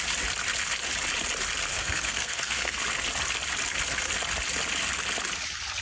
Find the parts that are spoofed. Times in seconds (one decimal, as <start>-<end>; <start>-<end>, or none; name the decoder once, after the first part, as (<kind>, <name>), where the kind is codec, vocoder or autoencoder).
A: 1.7-2.8 (codec, SNAC)